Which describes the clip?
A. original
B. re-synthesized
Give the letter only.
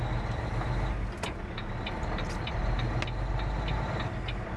A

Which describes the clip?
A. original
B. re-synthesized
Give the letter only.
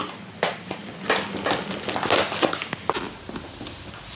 A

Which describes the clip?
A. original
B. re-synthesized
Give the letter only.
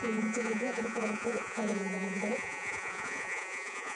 B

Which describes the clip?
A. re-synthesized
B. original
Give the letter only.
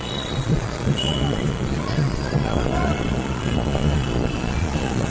A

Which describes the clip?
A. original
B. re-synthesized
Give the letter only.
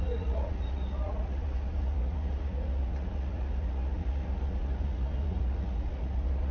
B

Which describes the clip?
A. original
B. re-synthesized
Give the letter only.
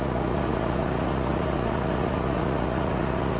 B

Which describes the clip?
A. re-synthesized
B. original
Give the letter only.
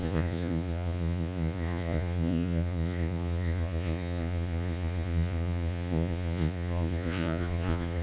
A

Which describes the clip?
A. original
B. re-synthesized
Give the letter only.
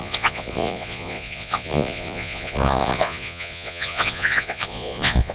B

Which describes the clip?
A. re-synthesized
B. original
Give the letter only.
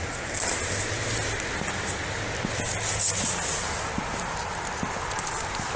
B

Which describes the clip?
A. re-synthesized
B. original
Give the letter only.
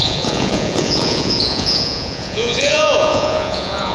A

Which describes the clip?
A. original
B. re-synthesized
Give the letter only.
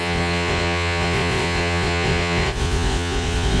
B